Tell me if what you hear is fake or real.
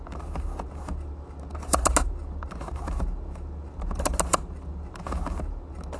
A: real